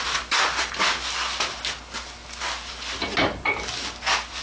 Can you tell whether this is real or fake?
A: real